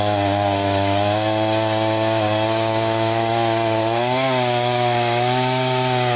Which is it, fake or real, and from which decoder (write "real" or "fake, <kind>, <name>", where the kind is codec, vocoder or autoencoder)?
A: fake, codec, DAC